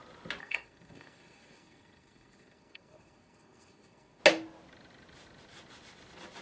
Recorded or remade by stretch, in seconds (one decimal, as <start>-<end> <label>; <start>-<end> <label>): 0.0-0.4 recorded; 0.4-4.2 remade; 4.2-6.4 recorded